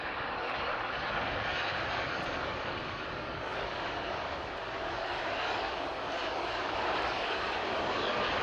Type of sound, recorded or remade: remade